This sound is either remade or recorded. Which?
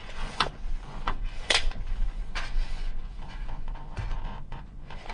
remade